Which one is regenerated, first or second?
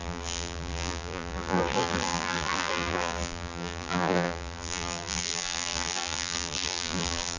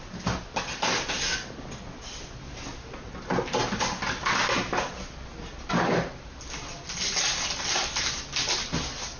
first